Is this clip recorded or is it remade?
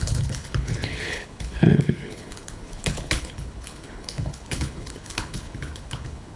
remade